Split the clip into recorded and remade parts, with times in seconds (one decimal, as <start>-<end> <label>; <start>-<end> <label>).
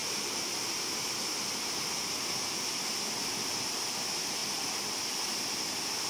0.0-3.2 recorded; 3.2-4.4 remade; 4.4-6.1 recorded